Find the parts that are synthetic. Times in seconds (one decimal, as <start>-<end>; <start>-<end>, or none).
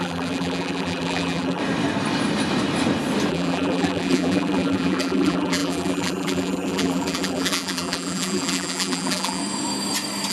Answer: 0.0-1.6; 3.3-9.4